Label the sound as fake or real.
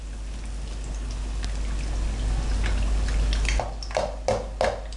real